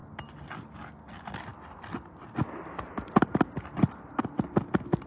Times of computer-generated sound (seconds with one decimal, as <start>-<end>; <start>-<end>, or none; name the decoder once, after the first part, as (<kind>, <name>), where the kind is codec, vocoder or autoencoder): none